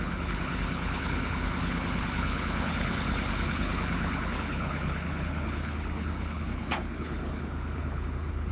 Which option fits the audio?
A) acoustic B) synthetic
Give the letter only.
B